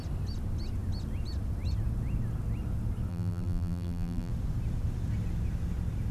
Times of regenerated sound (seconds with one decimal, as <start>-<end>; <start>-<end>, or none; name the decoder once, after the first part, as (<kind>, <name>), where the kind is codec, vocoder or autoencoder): 3.1-4.3 (vocoder, BigVGAN v2)